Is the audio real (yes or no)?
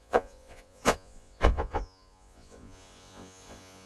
no